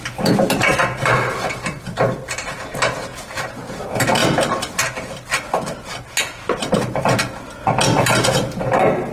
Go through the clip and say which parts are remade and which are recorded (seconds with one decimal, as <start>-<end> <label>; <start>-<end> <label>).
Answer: 0.0-9.1 recorded